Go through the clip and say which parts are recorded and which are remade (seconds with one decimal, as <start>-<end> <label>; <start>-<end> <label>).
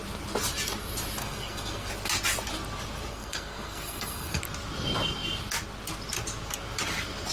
0.0-1.2 recorded; 1.2-1.9 remade; 1.9-3.1 recorded; 3.1-4.4 remade; 4.4-7.3 recorded